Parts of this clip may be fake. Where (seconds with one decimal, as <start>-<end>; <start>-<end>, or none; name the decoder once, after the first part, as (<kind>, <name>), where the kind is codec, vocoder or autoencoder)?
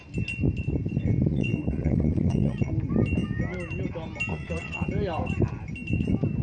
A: 1.3-2.7 (vocoder, Vocos); 4.3-4.9